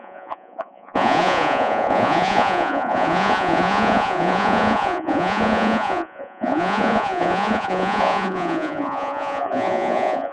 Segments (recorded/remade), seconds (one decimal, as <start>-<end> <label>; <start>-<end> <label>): 0.0-10.3 remade

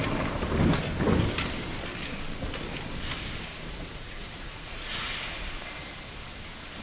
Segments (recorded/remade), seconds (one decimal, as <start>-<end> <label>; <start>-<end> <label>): 0.0-3.5 recorded; 3.5-5.6 remade; 5.6-6.8 recorded

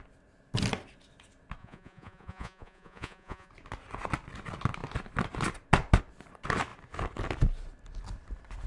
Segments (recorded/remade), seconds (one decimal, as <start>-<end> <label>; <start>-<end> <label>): 0.0-1.6 recorded; 1.6-3.5 remade; 3.5-8.7 recorded

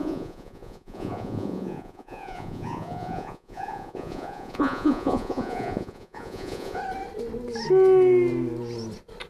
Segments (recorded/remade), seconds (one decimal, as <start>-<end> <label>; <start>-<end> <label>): 0.0-6.8 remade; 6.8-9.3 recorded

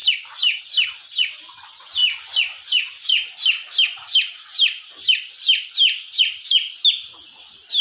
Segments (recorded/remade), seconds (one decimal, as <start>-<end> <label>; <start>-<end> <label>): 0.0-7.8 recorded